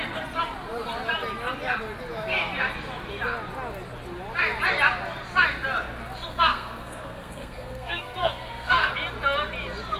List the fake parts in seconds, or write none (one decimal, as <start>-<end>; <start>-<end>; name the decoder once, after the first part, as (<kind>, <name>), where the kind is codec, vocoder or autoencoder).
6.3-8.9 (codec, SNAC)